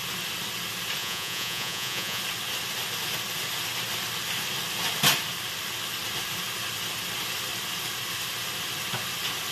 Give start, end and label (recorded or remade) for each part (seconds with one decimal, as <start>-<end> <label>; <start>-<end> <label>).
0.0-1.0 recorded; 1.0-2.2 remade; 2.2-9.5 recorded